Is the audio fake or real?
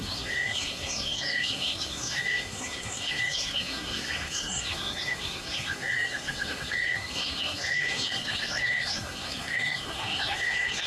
fake